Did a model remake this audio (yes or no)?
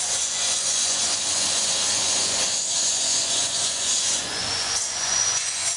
yes